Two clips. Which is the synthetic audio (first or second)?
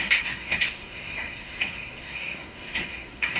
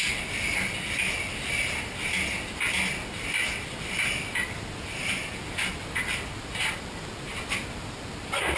first